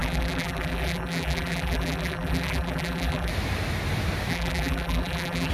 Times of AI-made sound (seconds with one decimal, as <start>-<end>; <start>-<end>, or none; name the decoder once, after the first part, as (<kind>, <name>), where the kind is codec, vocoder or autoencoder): 0.0-3.3 (vocoder, BigVGAN v2); 4.3-5.5